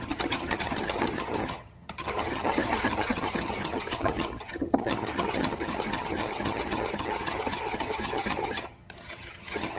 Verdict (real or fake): fake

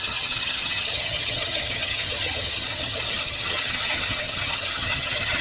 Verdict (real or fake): fake